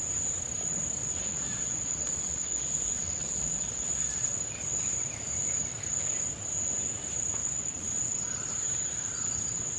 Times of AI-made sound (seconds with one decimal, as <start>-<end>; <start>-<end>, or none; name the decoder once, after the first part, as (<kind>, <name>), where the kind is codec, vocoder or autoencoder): 1.0-4.4 (vocoder, Vocos); 7.4-8.1